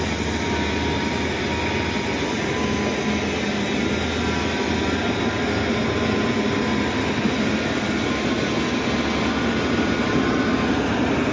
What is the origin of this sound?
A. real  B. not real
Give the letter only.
A